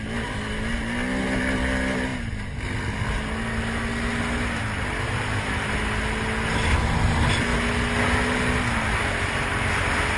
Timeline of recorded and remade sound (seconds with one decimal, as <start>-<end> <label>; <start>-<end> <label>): 0.0-10.2 recorded